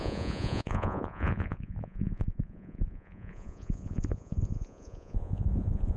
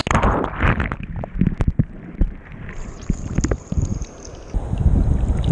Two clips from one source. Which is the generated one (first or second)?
first